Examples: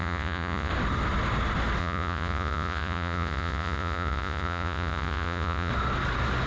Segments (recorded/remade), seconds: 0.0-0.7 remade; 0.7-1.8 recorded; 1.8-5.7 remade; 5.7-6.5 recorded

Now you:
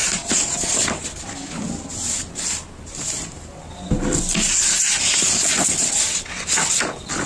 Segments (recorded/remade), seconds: 0.0-7.3 recorded

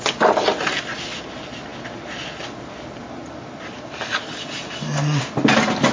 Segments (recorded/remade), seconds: 0.0-5.9 recorded

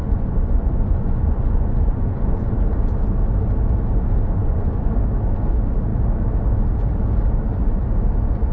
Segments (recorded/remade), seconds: 0.0-2.5 remade; 2.5-4.4 recorded; 4.4-4.9 remade; 4.9-8.5 recorded